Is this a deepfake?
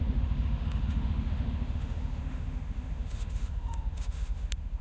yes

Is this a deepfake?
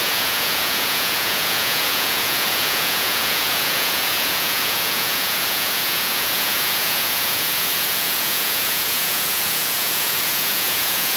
yes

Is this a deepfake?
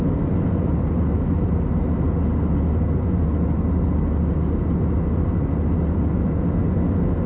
no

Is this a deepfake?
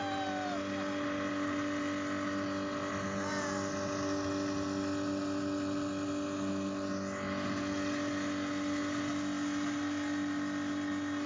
no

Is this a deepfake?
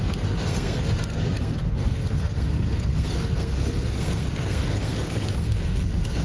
yes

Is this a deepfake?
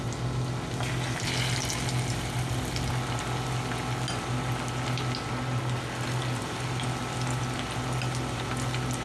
no